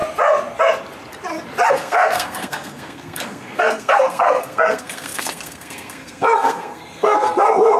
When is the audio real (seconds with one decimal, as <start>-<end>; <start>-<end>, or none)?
0.0-1.7